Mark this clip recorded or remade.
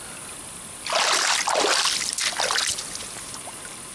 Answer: recorded